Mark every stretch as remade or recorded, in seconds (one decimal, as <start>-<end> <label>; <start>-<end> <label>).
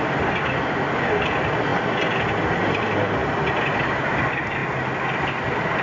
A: 0.0-5.8 recorded